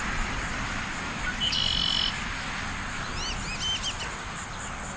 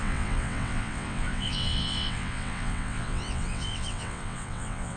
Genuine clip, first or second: first